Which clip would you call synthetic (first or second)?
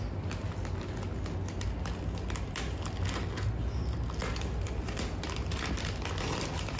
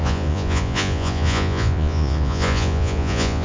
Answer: second